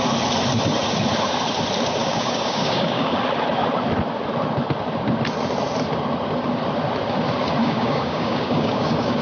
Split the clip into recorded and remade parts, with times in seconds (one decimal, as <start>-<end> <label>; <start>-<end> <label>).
0.0-2.0 recorded; 2.0-3.2 remade; 3.2-7.6 recorded; 7.6-9.2 remade